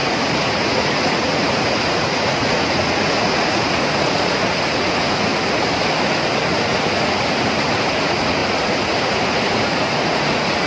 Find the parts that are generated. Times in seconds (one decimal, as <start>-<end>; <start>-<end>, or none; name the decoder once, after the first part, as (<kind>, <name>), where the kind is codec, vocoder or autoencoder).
0.0-5.3 (vocoder, Vocos); 6.5-10.7